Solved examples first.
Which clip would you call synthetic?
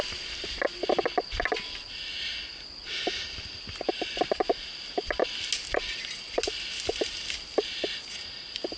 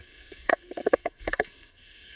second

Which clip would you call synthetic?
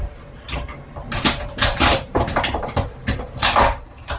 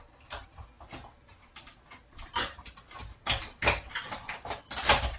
first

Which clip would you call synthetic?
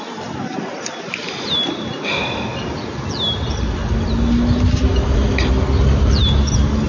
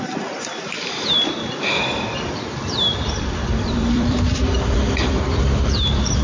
second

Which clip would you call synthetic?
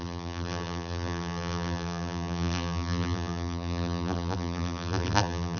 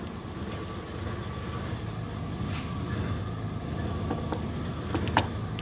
first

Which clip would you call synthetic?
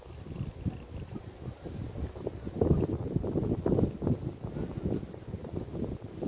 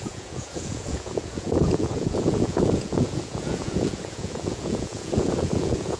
second